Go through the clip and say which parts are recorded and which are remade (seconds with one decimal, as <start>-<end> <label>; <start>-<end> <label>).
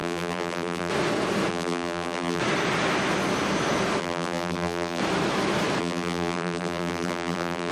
0.0-0.9 remade; 0.9-1.5 recorded; 1.5-2.4 remade; 2.4-4.0 recorded; 4.0-5.0 remade; 5.0-5.8 recorded; 5.8-7.7 remade